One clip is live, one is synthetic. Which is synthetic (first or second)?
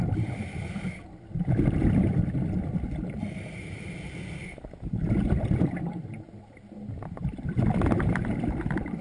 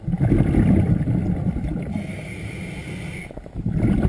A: first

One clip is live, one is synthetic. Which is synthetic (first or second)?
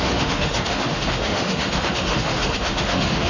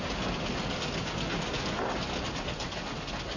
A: first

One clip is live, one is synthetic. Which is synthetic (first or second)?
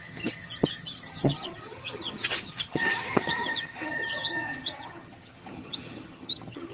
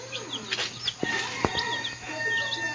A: first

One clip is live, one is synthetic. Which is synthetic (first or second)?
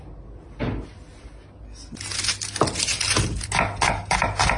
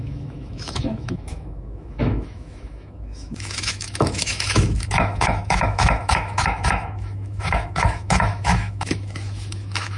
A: second